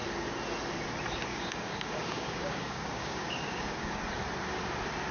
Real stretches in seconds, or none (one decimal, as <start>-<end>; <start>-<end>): 0.0-1.3; 4.0-5.1